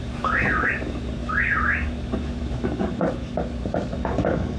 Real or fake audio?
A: fake